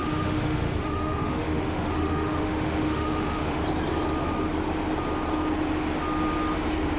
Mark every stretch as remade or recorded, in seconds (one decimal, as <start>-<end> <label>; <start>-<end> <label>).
0.0-3.6 remade; 3.6-7.0 recorded